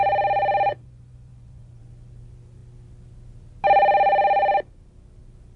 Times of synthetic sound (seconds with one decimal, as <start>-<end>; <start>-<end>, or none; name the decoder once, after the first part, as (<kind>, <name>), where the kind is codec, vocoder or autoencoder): 0.7-1.8 (vocoder, Vocos)